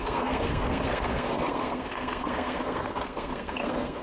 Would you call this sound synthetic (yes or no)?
yes